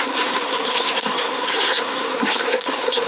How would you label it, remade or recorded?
remade